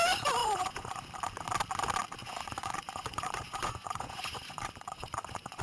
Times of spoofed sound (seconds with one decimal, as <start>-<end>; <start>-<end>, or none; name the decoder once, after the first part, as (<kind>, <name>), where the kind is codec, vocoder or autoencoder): 0.4-1.0 (vocoder, Vocos); 2.2-5.6